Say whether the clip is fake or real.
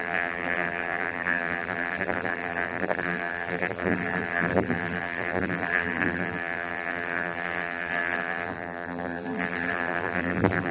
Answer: fake